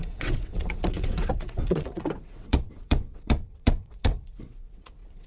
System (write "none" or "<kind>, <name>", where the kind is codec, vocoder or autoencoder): vocoder, WaveNeXt